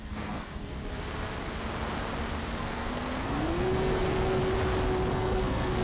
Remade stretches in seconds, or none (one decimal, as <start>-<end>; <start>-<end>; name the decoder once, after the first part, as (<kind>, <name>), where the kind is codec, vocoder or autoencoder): 0.0-0.8 (codec, SNAC); 2.6-4.4; 5.1-5.8